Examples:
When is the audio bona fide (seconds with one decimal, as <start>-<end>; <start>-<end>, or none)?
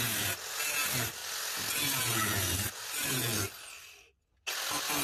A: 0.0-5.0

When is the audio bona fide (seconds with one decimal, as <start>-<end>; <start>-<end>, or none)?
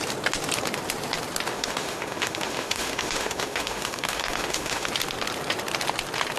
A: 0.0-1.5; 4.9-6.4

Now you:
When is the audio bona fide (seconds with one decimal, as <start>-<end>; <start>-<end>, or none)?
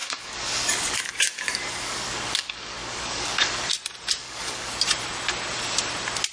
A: 3.7-4.2; 4.7-6.3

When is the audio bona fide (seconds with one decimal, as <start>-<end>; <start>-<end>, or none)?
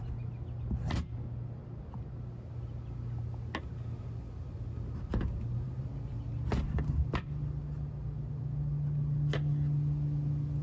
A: 0.0-10.6